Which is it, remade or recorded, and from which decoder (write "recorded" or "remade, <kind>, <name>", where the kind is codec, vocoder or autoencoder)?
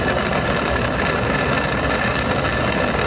remade, vocoder, BigVGAN v2